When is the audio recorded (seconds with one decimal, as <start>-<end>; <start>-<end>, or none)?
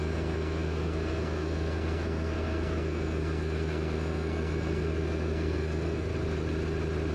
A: 6.1-7.1